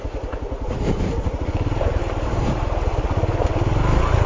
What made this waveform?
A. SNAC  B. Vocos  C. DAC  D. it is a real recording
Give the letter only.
D